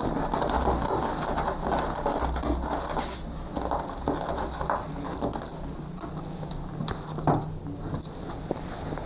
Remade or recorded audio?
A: recorded